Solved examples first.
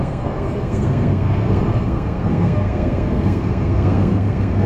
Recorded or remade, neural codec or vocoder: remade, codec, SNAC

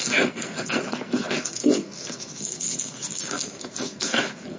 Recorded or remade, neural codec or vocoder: remade, codec, SNAC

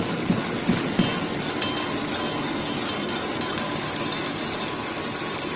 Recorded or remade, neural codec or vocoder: recorded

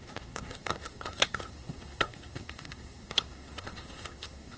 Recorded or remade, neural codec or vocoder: remade, codec, SNAC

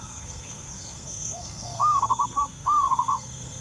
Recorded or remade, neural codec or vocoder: remade, codec, SNAC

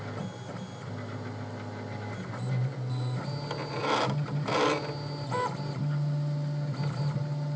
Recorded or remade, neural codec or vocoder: recorded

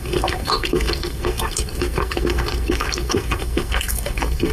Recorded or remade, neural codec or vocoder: remade, codec, SNAC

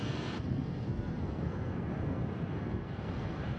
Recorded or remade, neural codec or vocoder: remade, codec, SNAC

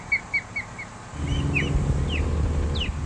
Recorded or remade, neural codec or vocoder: recorded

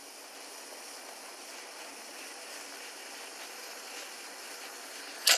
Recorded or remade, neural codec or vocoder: recorded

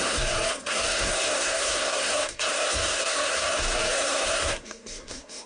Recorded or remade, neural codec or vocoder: remade, codec, SNAC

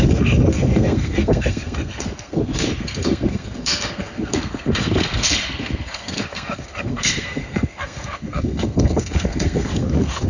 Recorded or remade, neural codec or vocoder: remade, codec, SNAC